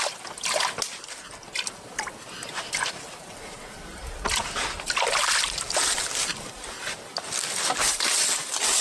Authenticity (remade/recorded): recorded